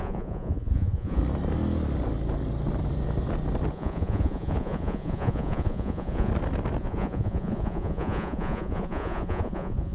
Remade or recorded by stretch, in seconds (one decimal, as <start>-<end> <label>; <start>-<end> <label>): 0.0-1.2 remade; 1.2-3.7 recorded; 3.7-6.3 remade; 6.3-6.8 recorded; 6.8-9.9 remade